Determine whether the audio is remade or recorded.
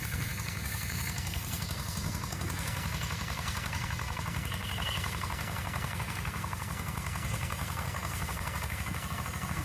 remade